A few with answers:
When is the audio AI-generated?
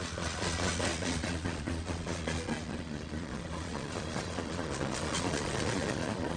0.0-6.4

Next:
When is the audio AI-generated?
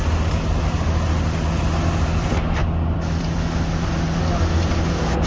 none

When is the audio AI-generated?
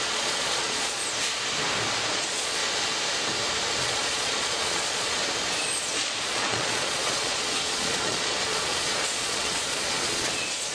0.0-1.0; 2.1-2.6; 3.8-5.2; 5.8-10.7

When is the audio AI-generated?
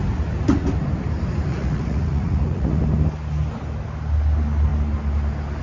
1.5-2.8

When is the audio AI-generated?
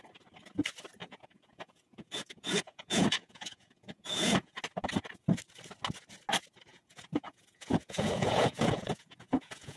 1.0-4.6; 6.7-9.8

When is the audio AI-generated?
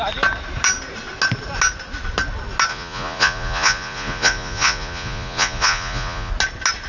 2.7-6.3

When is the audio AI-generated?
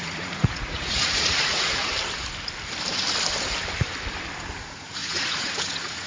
0.0-1.9; 4.6-6.1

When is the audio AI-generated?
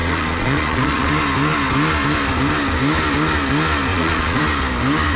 0.0-1.1; 3.9-4.4